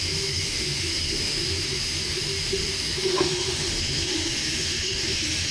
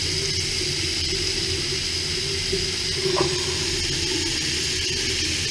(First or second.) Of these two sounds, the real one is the second